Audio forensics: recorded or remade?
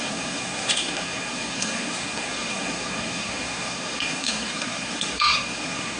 remade